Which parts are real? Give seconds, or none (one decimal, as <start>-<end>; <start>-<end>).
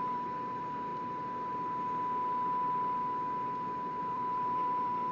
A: 0.9-4.0